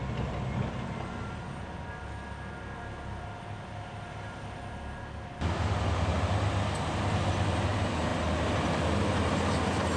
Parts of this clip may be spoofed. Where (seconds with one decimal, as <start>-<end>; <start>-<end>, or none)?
none